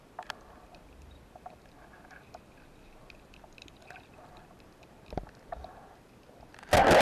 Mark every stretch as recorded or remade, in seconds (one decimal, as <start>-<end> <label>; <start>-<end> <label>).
0.0-7.0 recorded